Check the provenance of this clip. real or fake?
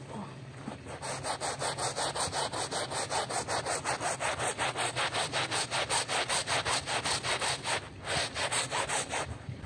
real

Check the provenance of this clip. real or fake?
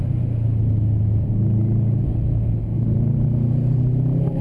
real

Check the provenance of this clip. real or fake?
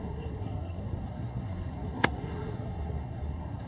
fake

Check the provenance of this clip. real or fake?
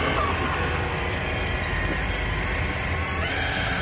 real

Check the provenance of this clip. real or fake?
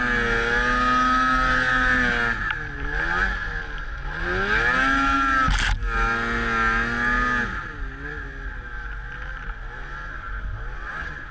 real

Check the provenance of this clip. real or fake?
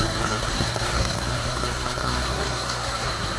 fake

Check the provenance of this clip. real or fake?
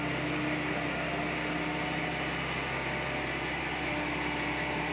real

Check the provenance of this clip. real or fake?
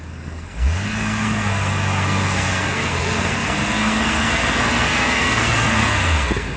fake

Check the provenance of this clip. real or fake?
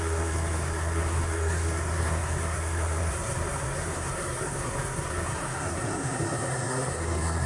fake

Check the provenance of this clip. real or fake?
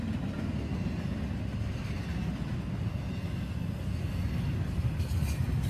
real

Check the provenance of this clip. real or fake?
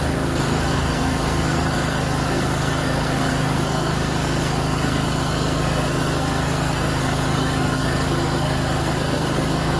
fake